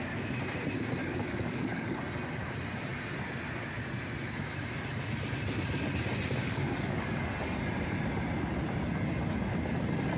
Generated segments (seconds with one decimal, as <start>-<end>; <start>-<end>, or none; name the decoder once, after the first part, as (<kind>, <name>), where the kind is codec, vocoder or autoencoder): 1.0-2.0 (codec, DAC); 6.4-7.2